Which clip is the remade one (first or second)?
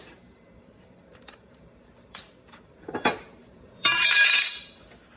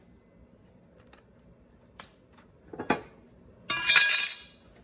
first